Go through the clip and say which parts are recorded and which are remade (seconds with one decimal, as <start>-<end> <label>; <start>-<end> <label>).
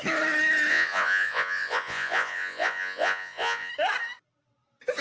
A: 0.0-0.7 recorded; 0.7-3.7 remade; 3.7-5.0 recorded